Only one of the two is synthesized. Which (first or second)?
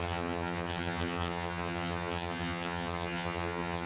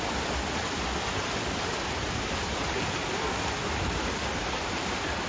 first